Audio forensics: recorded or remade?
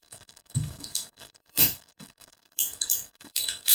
remade